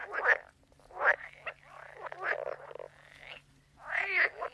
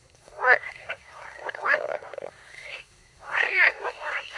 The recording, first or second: first